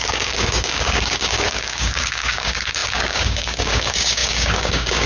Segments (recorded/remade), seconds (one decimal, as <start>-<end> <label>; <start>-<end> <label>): 0.0-5.1 remade